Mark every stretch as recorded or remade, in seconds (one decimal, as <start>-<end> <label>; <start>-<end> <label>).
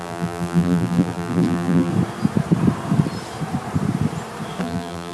0.0-1.9 remade; 1.9-4.6 recorded; 4.6-5.1 remade